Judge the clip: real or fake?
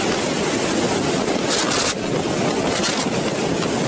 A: real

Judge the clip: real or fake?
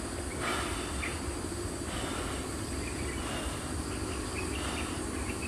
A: real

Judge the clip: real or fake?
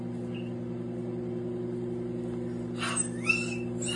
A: real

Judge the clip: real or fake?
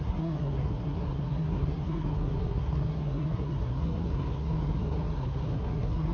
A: fake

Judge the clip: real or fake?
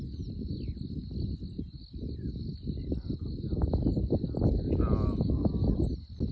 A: real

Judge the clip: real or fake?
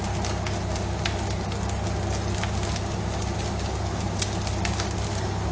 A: real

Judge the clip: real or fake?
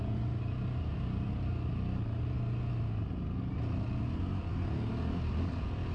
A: real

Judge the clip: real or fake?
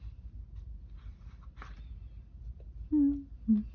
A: real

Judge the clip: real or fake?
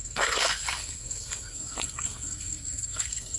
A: fake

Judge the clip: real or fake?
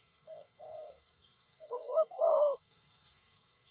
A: fake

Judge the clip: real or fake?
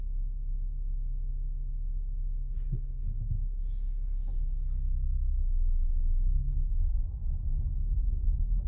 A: real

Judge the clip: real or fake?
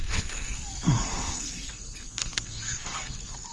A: fake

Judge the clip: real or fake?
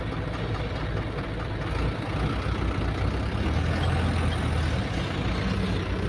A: real